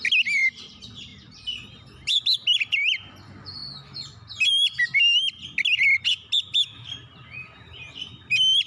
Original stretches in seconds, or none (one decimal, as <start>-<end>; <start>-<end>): 0.0-8.7